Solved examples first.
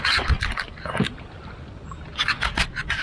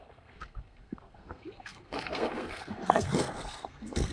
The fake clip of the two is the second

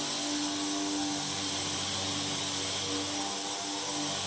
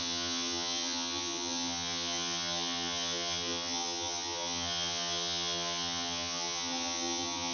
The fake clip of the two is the second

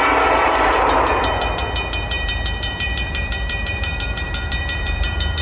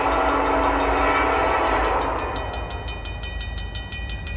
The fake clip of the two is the first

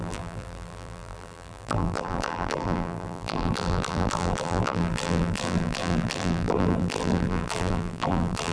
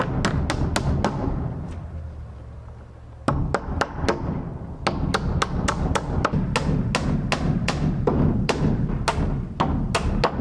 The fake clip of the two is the first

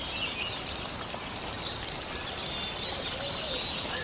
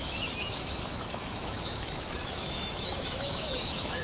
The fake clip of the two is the second